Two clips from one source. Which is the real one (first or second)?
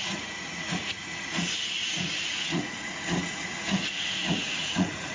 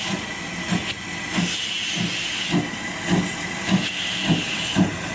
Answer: second